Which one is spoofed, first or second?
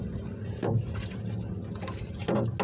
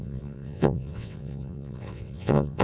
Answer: second